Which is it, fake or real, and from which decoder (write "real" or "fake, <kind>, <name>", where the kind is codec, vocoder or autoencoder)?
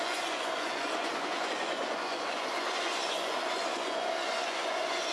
fake, vocoder, Vocos